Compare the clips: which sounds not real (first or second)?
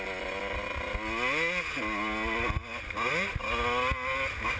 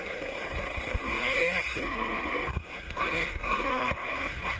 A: second